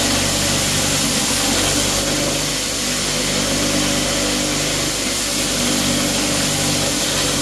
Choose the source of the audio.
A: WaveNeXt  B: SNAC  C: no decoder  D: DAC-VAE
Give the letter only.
C